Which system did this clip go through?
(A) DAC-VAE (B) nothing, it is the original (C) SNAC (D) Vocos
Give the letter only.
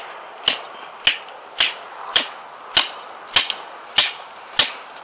B